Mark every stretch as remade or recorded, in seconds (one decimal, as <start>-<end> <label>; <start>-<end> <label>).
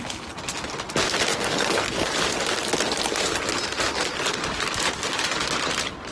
0.0-1.3 recorded; 1.3-2.1 remade; 2.1-6.1 recorded